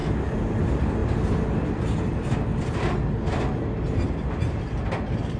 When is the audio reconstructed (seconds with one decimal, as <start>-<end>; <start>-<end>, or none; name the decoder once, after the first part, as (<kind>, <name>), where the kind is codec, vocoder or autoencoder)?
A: none